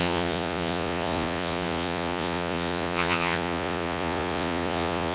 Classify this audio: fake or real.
fake